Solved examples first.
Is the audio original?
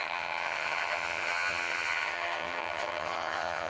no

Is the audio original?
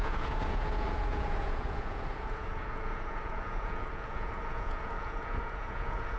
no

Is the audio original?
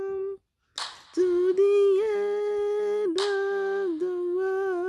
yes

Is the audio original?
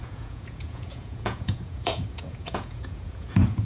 no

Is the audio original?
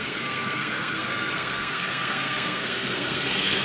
no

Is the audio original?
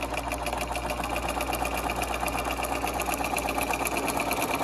yes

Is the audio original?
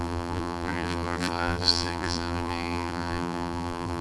no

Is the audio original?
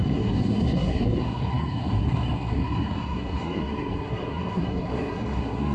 no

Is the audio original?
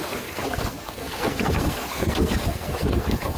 no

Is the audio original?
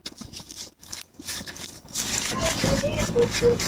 no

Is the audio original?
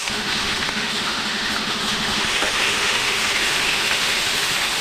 no